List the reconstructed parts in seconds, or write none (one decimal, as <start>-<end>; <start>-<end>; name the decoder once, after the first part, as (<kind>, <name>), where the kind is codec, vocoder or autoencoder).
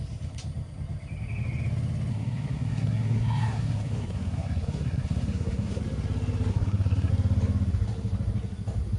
2.1-5.8 (codec, SNAC); 6.5-7.1